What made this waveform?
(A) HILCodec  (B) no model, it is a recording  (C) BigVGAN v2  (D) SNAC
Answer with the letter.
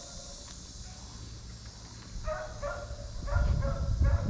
B